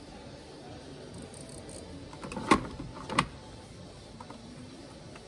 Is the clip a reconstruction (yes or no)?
no